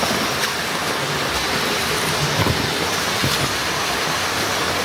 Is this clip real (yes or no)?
yes